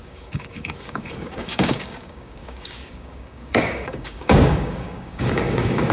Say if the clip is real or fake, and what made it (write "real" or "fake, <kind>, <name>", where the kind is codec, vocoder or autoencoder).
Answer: fake, codec, DAC